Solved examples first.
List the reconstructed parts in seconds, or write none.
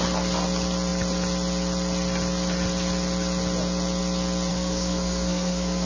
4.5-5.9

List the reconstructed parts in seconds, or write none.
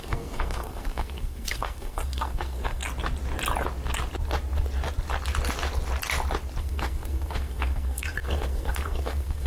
0.0-2.8; 6.6-9.5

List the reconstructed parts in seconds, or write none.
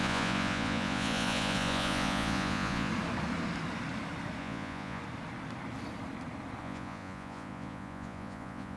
0.0-2.9; 4.4-5.0; 6.6-8.8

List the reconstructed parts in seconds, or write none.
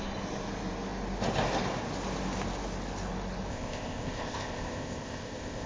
3.5-5.7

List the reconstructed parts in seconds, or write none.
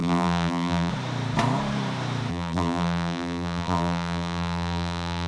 0.0-0.9; 2.3-5.3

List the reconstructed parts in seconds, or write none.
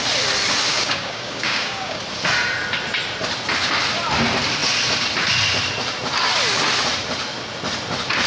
0.7-2.0